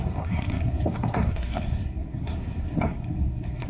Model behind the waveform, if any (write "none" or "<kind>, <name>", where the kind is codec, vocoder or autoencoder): codec, SNAC